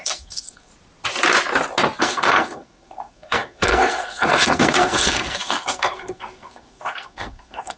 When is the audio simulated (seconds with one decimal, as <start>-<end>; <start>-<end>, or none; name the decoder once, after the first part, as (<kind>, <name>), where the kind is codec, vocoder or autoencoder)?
0.0-0.7 (codec, SNAC); 2.0-7.8